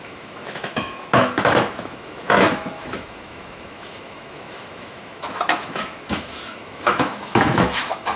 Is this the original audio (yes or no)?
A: no